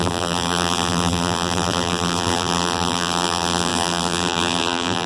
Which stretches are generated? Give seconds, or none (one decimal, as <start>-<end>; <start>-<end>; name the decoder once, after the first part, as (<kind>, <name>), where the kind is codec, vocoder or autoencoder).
0.0-5.1 (vocoder, BigVGAN v2)